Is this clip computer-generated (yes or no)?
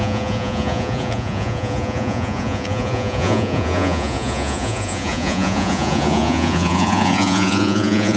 yes